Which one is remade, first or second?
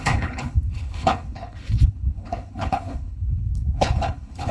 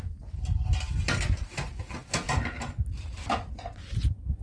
first